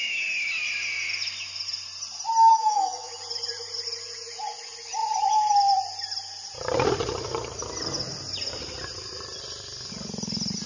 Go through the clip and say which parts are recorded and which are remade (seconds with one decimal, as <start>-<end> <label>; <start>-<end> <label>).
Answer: 0.0-2.5 recorded; 2.5-3.2 remade; 3.2-10.7 recorded